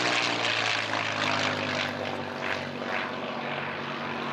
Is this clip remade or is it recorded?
recorded